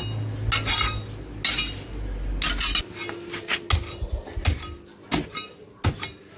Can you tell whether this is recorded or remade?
recorded